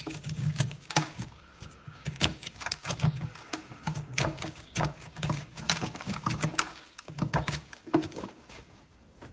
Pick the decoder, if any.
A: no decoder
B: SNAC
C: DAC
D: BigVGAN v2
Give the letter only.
C